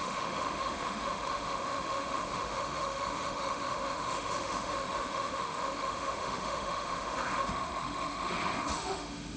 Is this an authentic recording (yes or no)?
no